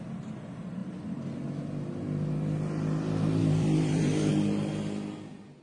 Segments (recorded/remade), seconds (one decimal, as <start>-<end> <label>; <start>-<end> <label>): 0.0-0.8 recorded; 0.8-1.3 remade; 1.3-3.4 recorded; 3.4-4.3 remade; 4.3-5.6 recorded